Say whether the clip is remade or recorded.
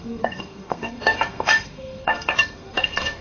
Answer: remade